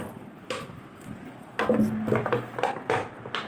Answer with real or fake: real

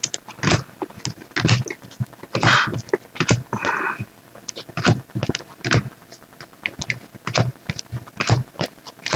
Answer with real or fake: real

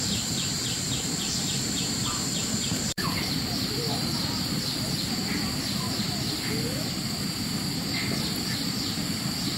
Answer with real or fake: fake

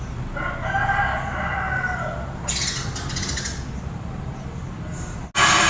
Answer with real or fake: real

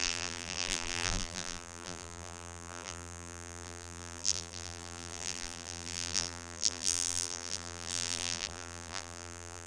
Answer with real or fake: fake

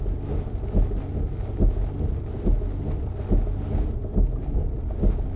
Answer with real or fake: real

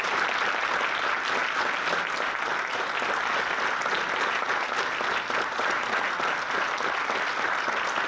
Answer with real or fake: real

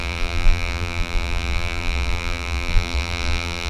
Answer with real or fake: fake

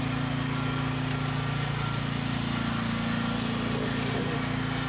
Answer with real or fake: real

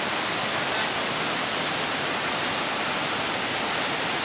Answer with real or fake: real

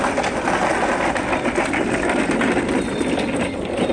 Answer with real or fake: real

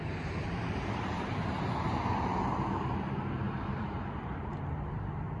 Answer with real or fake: fake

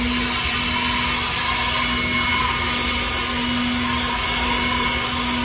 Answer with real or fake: real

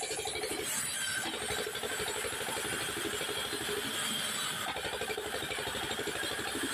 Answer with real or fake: real